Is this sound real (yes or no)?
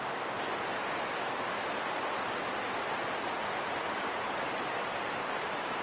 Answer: yes